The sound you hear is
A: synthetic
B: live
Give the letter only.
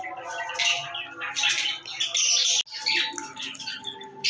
B